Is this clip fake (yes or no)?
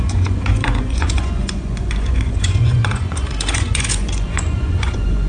yes